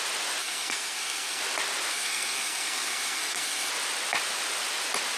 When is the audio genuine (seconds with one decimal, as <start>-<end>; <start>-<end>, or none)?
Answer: 0.0-0.4; 1.4-1.9; 3.7-5.2